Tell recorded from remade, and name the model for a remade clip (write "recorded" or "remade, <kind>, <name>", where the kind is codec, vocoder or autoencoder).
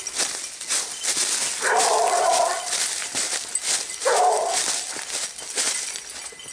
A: recorded